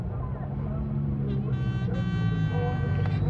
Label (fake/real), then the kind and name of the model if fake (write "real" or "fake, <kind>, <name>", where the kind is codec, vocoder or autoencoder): real